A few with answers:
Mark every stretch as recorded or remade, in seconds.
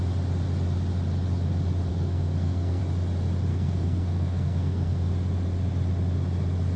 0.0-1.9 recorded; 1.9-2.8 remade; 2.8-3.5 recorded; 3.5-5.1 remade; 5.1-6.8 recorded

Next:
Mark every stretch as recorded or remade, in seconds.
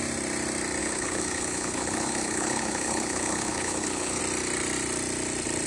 0.0-0.8 recorded; 0.8-4.2 remade; 4.2-5.7 recorded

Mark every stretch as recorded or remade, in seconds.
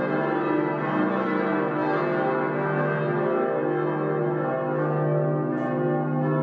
0.0-6.4 recorded